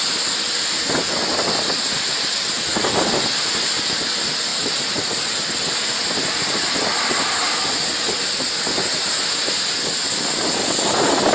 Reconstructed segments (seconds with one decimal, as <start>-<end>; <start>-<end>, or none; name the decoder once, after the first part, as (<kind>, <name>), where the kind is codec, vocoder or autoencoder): none